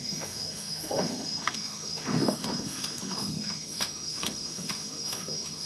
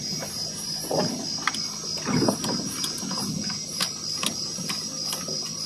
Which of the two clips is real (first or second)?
second